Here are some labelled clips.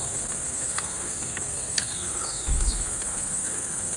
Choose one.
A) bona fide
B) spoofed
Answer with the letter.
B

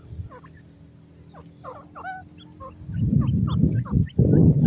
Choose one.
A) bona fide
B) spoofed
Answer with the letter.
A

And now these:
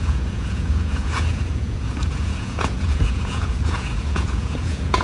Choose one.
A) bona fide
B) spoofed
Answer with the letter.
B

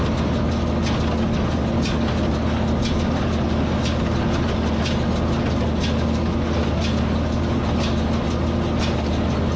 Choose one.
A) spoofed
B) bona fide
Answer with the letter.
B